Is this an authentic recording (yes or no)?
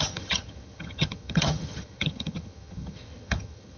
no